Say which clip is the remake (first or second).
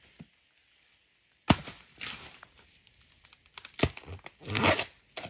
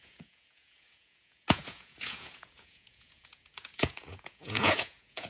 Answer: second